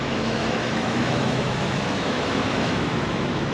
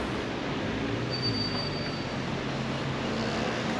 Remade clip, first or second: first